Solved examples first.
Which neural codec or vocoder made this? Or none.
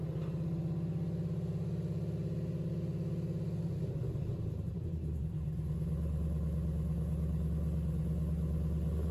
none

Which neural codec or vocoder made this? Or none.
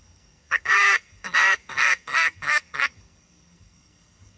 codec, SNAC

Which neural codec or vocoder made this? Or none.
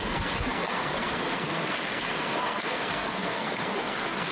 codec, SNAC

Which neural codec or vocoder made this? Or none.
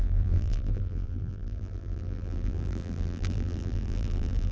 vocoder, BigVGAN v2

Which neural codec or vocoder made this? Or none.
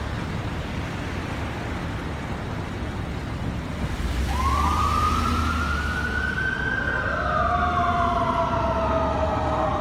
none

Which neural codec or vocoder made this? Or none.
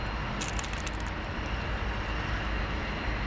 none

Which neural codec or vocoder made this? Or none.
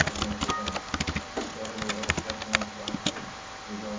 none